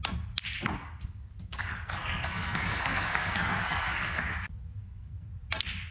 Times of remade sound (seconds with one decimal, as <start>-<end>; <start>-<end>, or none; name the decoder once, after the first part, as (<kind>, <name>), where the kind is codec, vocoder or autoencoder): 0.8-4.2 (codec, SNAC); 4.8-5.3